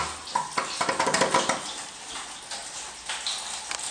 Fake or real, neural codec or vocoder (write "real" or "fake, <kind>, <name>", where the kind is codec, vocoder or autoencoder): real